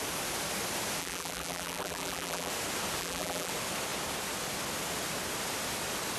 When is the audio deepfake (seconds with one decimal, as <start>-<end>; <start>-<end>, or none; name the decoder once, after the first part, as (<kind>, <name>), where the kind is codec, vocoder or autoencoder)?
1.0-2.5 (vocoder, BigVGAN v2); 3.0-3.5